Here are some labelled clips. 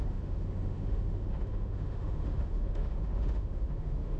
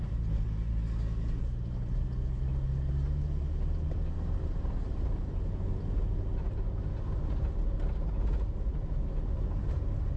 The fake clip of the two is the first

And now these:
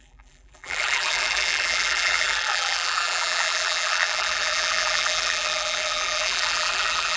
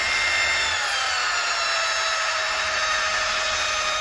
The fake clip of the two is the first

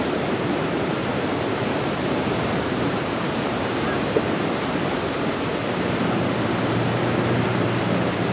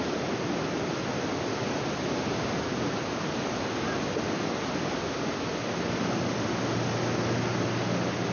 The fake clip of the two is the first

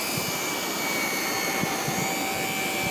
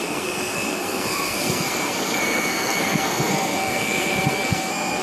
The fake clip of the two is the second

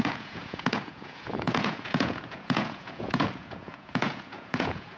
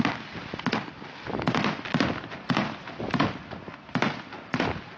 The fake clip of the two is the first